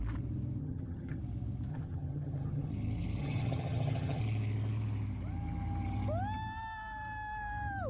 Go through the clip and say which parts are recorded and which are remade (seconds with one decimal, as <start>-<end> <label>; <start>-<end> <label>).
0.0-0.6 recorded; 0.6-1.2 remade; 1.2-1.7 recorded; 1.7-2.7 remade; 2.7-3.2 recorded; 3.2-4.2 remade; 4.2-7.9 recorded